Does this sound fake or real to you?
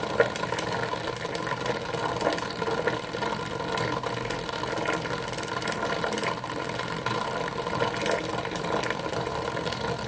real